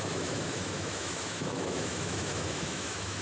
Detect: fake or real fake